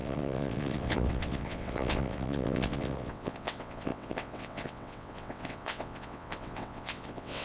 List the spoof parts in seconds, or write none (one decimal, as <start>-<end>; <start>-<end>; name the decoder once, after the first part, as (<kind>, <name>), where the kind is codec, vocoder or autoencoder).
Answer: 0.0-7.4 (vocoder, WaveNeXt)